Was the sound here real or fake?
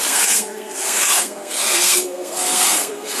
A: fake